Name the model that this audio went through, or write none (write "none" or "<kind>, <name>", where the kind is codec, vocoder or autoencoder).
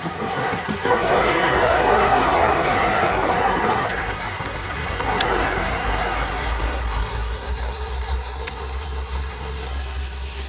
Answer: codec, SNAC